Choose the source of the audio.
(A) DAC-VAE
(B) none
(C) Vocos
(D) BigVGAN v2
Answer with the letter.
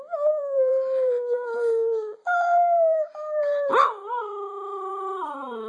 D